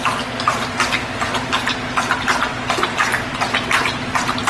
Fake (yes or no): no